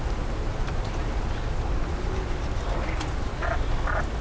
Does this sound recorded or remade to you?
recorded